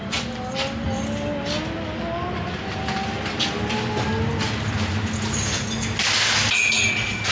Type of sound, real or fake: real